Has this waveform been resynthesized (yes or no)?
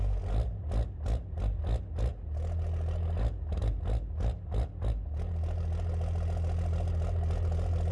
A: no